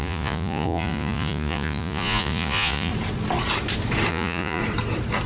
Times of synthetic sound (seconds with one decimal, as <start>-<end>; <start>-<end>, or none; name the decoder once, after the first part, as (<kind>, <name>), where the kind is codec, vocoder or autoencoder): 0.0-2.9 (vocoder, Vocos); 4.1-4.6